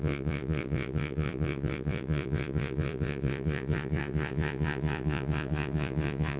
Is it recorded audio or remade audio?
remade